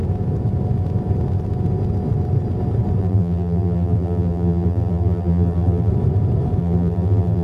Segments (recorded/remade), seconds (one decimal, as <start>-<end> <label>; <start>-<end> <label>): 0.0-3.0 recorded; 3.0-5.9 remade; 5.9-6.6 recorded; 6.6-7.4 remade